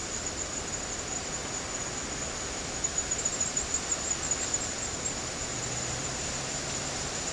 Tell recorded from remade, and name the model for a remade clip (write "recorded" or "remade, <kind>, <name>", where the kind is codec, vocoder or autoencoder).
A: recorded